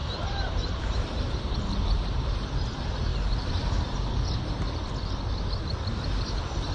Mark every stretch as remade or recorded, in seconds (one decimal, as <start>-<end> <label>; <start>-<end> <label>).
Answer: 0.0-1.0 remade; 1.0-6.7 recorded